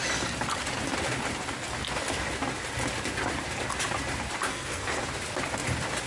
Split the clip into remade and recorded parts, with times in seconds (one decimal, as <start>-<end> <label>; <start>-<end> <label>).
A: 0.0-4.5 recorded; 4.5-5.0 remade; 5.0-6.1 recorded